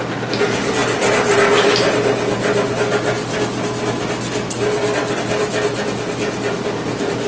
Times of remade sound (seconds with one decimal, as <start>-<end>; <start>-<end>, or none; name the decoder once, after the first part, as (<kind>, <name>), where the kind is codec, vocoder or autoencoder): none